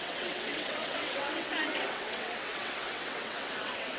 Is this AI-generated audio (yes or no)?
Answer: yes